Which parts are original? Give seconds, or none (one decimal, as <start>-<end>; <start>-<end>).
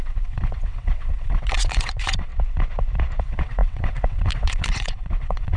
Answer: 2.3-3.2